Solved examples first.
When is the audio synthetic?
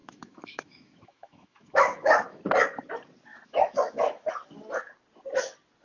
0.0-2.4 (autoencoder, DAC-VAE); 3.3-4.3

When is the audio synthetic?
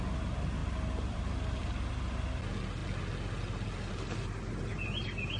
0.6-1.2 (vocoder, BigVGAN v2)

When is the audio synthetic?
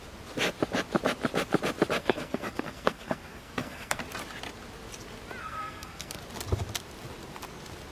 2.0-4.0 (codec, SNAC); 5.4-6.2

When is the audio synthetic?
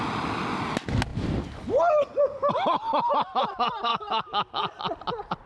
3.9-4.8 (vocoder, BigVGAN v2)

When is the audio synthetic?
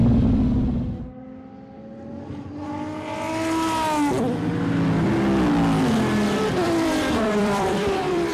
6.5-8.3 (vocoder, BigVGAN v2)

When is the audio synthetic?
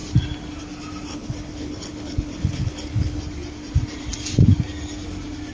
1.1-3.2 (codec, HILCodec)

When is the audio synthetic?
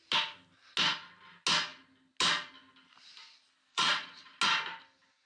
3.7-4.4 (vocoder, Vocos)